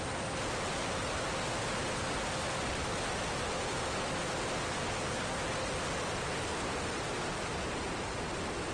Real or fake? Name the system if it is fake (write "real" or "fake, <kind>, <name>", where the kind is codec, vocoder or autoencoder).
real